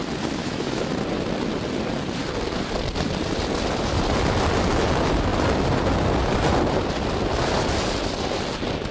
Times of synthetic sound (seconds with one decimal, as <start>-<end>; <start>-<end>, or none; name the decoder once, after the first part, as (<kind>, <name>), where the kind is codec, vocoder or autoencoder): 0.4-0.9 (autoencoder, DAC-VAE)

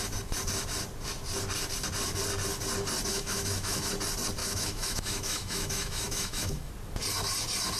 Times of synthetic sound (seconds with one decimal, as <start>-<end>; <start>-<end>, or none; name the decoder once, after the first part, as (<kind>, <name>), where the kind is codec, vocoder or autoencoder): 3.1-3.9 (autoencoder, DAC-VAE); 4.4-6.7

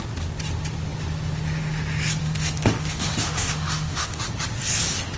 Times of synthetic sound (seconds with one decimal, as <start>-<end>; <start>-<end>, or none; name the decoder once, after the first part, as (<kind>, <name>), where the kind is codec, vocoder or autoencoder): 2.2-4.2 (autoencoder, DAC-VAE)